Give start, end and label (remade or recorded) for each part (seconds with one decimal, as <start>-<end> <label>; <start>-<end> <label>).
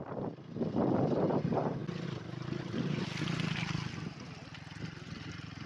0.0-5.7 recorded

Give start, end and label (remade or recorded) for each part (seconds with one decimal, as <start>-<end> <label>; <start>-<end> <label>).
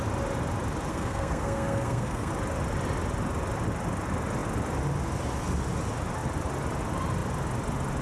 0.0-0.9 recorded; 0.9-2.3 remade; 2.3-8.0 recorded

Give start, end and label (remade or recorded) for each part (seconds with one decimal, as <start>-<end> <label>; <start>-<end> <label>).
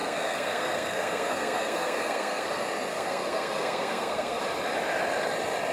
0.0-2.5 remade; 2.5-2.9 recorded; 2.9-4.4 remade; 4.4-5.7 recorded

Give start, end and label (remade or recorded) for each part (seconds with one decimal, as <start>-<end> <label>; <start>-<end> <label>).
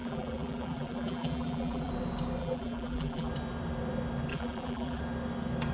0.0-1.9 remade; 1.9-2.4 recorded; 2.4-3.3 remade; 3.3-4.3 recorded; 4.3-5.0 remade; 5.0-5.7 recorded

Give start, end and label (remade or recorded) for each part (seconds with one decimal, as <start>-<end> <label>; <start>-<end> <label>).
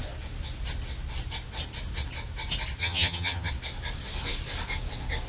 0.0-2.8 recorded; 2.8-3.5 remade; 3.5-5.3 recorded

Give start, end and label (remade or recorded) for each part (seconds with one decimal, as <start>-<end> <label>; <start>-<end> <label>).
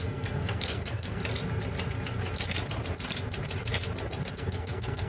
0.0-1.2 remade; 1.2-4.3 recorded; 4.3-5.1 remade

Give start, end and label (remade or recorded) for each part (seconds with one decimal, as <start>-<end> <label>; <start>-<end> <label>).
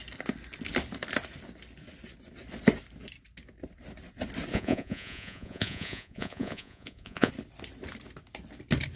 0.0-4.5 recorded; 4.5-7.3 remade; 7.3-9.0 recorded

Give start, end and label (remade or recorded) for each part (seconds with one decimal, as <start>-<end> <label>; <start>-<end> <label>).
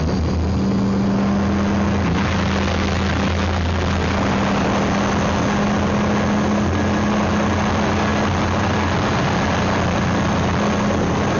0.0-11.4 recorded